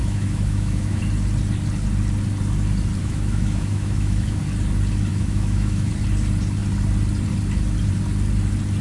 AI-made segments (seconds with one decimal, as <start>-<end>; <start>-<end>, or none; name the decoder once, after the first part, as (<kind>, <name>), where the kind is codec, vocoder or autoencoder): 0.0-1.0 (autoencoder, DAC-VAE); 3.0-4.4; 5.1-5.9